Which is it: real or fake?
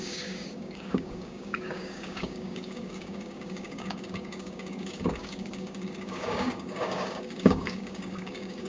fake